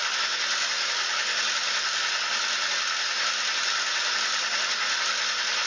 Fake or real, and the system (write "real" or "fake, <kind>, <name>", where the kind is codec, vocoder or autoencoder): real